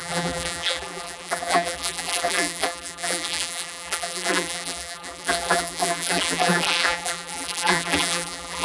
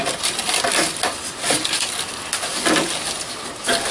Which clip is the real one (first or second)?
second